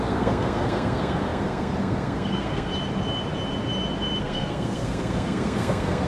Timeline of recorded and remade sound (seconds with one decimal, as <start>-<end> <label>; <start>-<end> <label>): 0.0-2.7 remade; 2.7-4.2 recorded; 4.2-6.1 remade